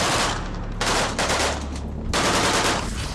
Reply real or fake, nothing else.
real